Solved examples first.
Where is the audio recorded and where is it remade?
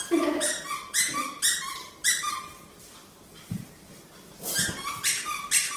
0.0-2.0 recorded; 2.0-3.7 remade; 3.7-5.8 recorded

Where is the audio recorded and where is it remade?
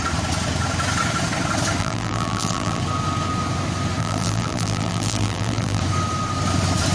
0.0-1.8 recorded; 1.8-2.8 remade; 2.8-4.0 recorded; 4.0-5.8 remade; 5.8-6.9 recorded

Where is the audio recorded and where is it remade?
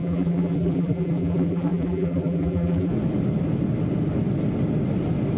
0.0-2.9 remade; 2.9-5.4 recorded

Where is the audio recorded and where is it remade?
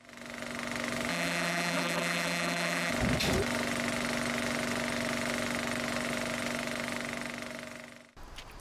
0.0-1.1 recorded; 1.1-2.9 remade; 2.9-8.6 recorded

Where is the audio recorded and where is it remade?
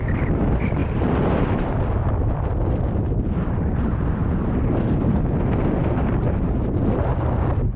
0.0-0.8 remade; 0.8-1.7 recorded; 1.7-4.2 remade; 4.2-5.1 recorded; 5.1-7.8 remade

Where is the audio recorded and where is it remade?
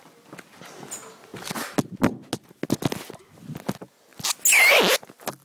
0.0-5.4 recorded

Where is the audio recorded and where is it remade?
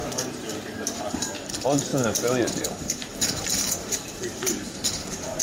0.0-1.3 remade; 1.3-1.9 recorded; 1.9-5.4 remade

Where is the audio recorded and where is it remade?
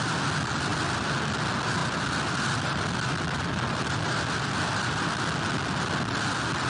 0.0-0.7 recorded; 0.7-1.2 remade; 1.2-1.8 recorded; 1.8-5.2 remade; 5.2-6.7 recorded